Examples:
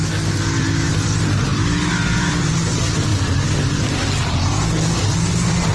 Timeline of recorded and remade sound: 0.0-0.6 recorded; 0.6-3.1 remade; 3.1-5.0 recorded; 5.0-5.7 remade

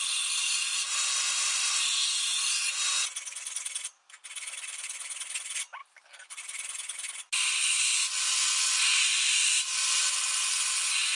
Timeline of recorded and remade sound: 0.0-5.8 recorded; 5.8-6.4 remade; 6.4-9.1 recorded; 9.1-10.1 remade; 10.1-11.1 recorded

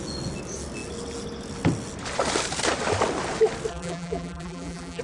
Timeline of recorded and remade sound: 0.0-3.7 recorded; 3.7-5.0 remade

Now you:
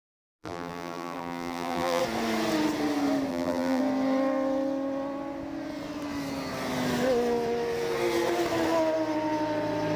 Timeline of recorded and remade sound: 0.0-0.4 recorded; 0.4-2.0 remade; 2.0-3.3 recorded; 3.3-3.8 remade; 3.8-10.0 recorded